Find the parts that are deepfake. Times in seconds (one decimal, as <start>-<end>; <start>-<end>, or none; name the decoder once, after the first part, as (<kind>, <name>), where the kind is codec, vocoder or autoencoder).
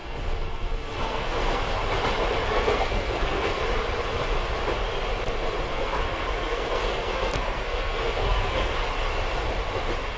0.0-1.6 (codec, SNAC); 2.5-3.6; 5.7-8.7